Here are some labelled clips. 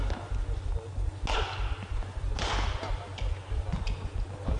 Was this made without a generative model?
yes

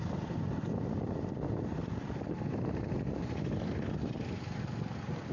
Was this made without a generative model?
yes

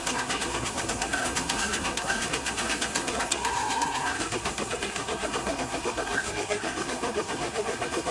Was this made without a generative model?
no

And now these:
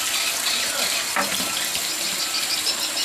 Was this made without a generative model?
yes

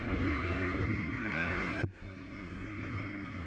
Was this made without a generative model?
no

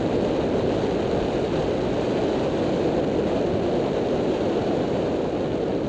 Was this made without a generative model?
yes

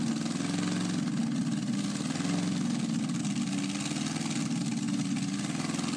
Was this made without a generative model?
yes